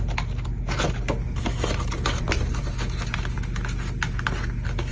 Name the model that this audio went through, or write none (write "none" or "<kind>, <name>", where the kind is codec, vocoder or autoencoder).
none